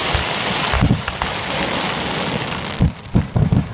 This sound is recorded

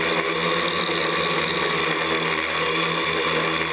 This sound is recorded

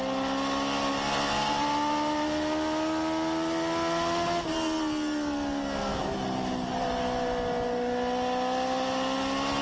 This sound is recorded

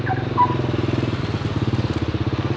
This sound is recorded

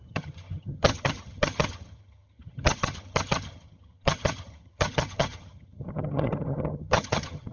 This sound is remade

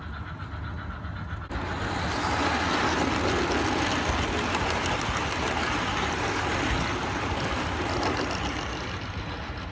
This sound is recorded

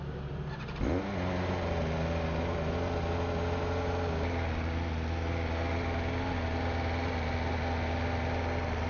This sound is recorded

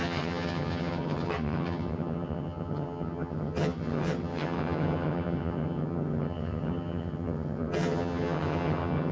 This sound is remade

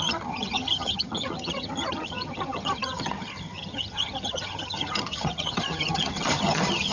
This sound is remade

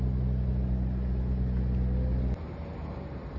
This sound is recorded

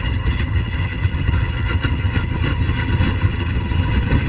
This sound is remade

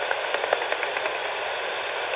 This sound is recorded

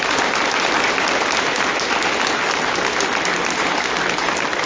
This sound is recorded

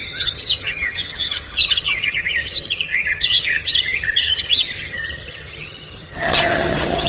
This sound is remade